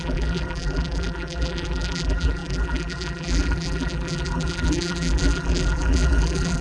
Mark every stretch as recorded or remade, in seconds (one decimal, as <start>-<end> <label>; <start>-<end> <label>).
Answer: 0.0-6.6 remade